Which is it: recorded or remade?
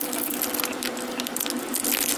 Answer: recorded